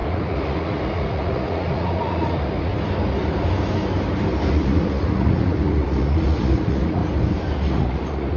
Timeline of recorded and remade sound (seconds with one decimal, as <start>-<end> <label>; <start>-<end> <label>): 0.0-2.7 remade; 2.7-4.5 recorded; 4.5-7.0 remade; 7.0-7.5 recorded; 7.5-8.4 remade

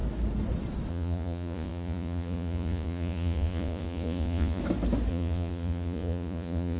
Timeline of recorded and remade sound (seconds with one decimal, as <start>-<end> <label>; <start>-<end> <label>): 0.0-0.9 recorded; 0.9-4.6 remade; 4.6-5.1 recorded; 5.1-6.8 remade

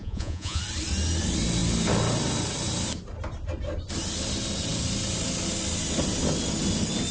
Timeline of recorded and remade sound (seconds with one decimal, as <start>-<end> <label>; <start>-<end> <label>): 0.0-0.6 remade; 0.6-7.1 recorded

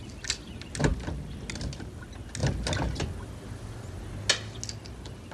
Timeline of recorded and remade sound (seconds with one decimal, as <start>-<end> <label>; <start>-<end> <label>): 0.0-5.3 recorded

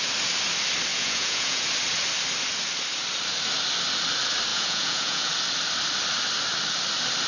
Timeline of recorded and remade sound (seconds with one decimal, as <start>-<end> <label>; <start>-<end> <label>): 0.0-0.9 recorded; 0.9-1.7 remade; 1.7-4.5 recorded; 4.5-5.3 remade; 5.3-7.3 recorded

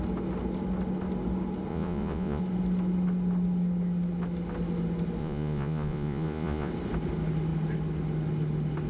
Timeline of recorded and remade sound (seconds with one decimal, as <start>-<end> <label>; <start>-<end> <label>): 0.0-1.7 recorded; 1.7-2.4 remade; 2.4-5.2 recorded; 5.2-6.7 remade; 6.7-8.9 recorded